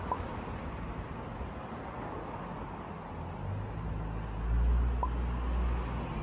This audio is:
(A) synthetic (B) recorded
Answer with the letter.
B